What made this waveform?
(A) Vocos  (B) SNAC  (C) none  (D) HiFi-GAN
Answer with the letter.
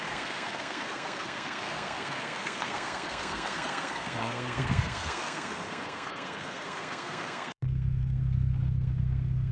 B